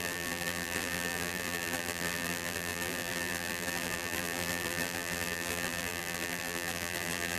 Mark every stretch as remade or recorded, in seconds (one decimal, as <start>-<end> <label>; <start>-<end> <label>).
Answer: 0.0-7.4 remade